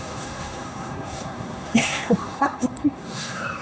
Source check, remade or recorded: remade